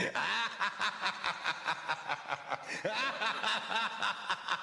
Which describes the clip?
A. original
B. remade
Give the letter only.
A